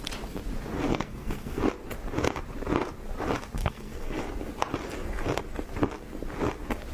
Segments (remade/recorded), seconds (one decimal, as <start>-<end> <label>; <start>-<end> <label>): 0.0-0.9 recorded; 0.9-1.6 remade; 1.6-3.6 recorded; 3.6-4.2 remade; 4.2-6.9 recorded